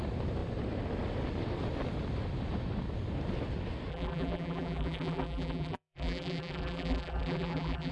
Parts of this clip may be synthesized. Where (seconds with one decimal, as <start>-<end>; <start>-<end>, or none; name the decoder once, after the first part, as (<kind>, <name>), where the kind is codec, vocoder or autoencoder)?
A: 3.9-7.9 (vocoder, BigVGAN v2)

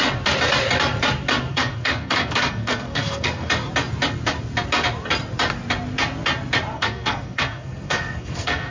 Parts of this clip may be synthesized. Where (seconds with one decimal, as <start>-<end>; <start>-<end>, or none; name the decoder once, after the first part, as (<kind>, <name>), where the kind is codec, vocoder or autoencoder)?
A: 1.5-3.5 (codec, SNAC); 6.7-8.7

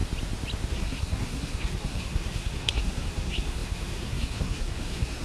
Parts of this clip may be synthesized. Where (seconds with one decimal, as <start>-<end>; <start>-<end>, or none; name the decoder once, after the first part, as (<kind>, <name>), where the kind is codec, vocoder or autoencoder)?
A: 0.7-5.2 (codec, SNAC)

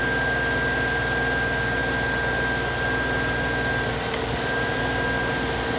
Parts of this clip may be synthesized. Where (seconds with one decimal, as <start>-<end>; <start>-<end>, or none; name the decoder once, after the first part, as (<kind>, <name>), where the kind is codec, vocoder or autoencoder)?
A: none

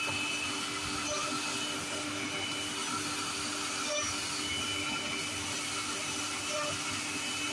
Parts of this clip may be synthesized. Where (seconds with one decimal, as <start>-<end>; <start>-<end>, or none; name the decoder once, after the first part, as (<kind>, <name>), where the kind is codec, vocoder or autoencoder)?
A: none

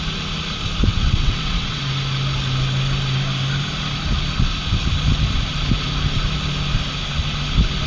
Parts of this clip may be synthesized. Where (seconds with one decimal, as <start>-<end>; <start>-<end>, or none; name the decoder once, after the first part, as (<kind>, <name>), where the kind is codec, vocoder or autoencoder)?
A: 0.9-1.8 (vocoder, WaveNeXt)

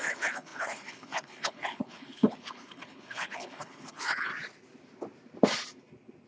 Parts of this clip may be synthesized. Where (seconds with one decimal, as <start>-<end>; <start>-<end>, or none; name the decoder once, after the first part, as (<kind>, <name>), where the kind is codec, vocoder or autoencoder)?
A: 0.0-4.3 (codec, HILCodec)